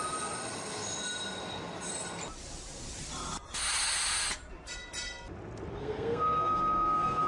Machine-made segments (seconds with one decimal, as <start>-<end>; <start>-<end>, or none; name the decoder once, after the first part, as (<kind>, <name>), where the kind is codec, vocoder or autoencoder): 5.8-7.3 (codec, SNAC)